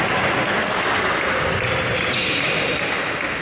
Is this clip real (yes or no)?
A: yes